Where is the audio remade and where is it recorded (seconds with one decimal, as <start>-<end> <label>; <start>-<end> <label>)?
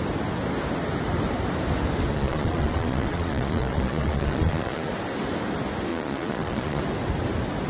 0.0-2.1 recorded; 2.1-4.9 remade; 4.9-5.9 recorded; 5.9-6.8 remade; 6.8-7.7 recorded